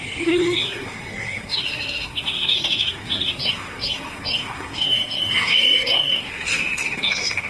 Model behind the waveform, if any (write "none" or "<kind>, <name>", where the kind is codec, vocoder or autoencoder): codec, SNAC